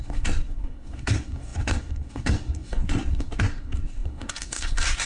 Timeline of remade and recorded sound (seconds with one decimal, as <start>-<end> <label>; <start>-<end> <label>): 0.0-5.1 remade

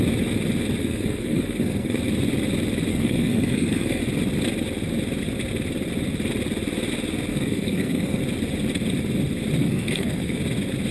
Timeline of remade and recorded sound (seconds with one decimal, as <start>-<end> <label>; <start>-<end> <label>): 0.0-0.8 recorded; 0.8-2.0 remade; 2.0-2.9 recorded; 2.9-4.0 remade; 4.0-7.3 recorded; 7.3-8.2 remade; 8.2-9.6 recorded; 9.6-10.4 remade; 10.4-10.9 recorded

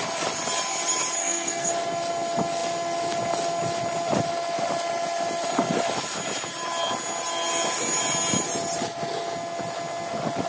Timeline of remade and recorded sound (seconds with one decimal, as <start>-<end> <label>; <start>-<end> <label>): 0.0-1.2 recorded; 1.2-1.7 remade; 1.7-10.5 recorded